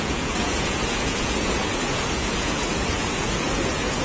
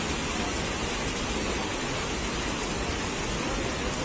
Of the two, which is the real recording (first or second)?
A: second